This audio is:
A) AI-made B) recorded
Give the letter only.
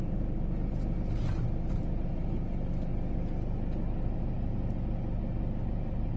B